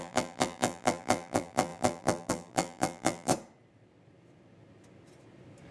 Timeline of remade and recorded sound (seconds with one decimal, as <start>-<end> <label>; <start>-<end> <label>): 0.0-3.3 remade; 3.3-5.7 recorded